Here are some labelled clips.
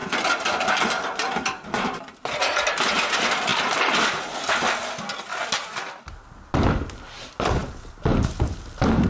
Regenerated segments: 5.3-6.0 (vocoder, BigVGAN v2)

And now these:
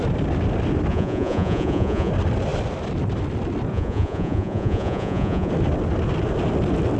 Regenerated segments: 0.9-2.1 (vocoder, Vocos); 3.7-5.5

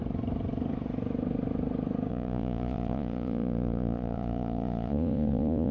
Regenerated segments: 2.1-5.7 (vocoder, Vocos)

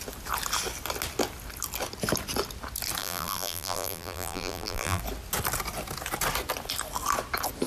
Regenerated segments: 3.0-5.0 (vocoder, BigVGAN v2)